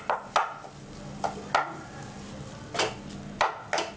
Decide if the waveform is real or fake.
real